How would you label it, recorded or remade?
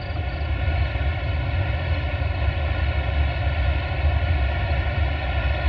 recorded